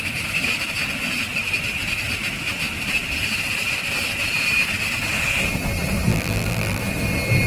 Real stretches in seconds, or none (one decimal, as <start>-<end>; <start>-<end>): 0.0-6.1; 6.8-7.5